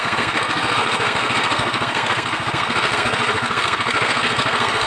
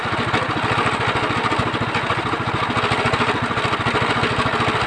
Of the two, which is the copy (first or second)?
first